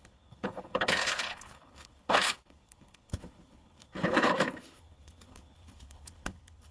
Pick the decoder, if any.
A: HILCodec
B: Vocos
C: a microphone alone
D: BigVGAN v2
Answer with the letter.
A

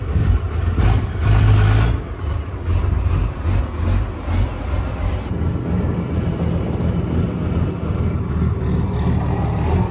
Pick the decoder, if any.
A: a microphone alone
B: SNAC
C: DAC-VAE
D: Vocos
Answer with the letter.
A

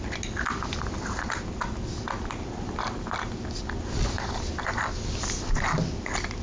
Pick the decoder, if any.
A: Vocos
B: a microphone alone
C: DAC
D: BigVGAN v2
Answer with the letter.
B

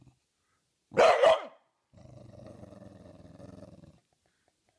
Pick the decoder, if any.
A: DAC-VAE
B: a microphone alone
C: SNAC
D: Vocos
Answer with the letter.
B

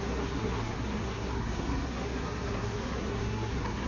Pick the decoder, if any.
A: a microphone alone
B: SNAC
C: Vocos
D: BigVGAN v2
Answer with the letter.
B